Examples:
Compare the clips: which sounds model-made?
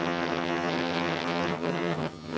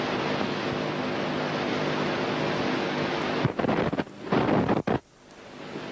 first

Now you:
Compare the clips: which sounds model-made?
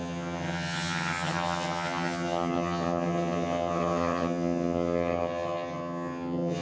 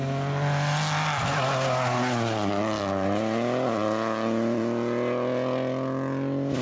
first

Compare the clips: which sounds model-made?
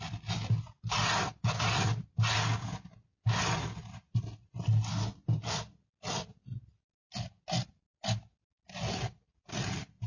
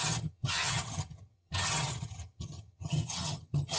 second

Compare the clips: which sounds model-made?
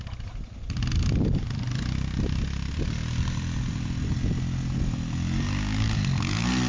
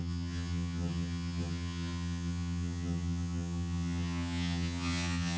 second